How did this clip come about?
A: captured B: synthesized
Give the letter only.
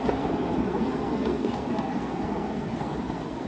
B